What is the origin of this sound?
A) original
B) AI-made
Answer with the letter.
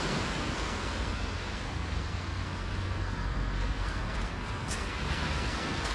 B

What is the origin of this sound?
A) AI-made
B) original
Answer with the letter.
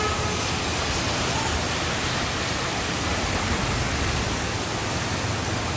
B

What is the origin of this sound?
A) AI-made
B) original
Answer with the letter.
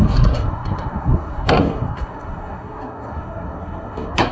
A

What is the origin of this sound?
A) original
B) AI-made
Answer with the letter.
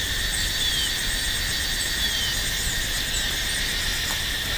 A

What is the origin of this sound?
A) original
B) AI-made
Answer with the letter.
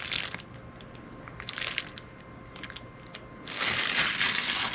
A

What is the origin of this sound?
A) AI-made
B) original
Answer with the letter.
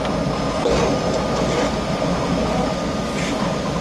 B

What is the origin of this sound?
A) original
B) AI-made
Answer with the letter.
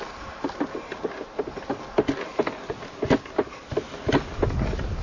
A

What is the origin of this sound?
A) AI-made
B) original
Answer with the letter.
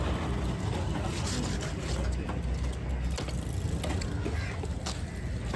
B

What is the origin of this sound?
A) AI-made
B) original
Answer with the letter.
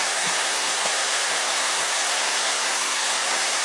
A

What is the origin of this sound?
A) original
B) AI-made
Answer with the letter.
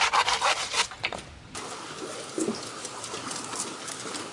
A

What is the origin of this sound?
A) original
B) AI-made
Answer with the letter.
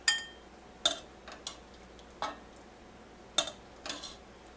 A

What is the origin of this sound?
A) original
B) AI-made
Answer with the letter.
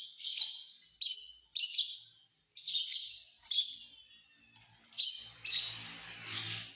A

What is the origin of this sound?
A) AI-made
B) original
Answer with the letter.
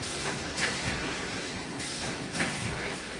A